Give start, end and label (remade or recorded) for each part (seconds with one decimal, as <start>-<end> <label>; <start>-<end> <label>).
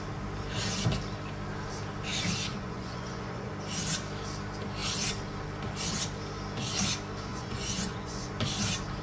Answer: 0.0-2.5 recorded; 2.5-3.5 remade; 3.5-7.3 recorded; 7.3-8.3 remade; 8.3-9.0 recorded